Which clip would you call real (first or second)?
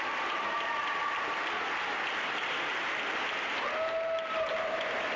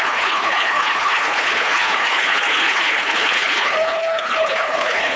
first